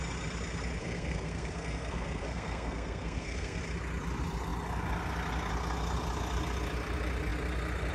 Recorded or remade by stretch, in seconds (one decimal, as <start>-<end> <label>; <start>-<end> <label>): 0.0-0.8 recorded; 0.8-3.6 remade; 3.6-7.9 recorded